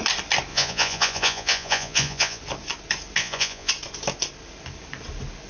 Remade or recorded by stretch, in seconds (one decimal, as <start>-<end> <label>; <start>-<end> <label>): 0.0-0.5 recorded; 0.5-2.4 remade; 2.4-3.2 recorded; 3.2-3.7 remade; 3.7-5.5 recorded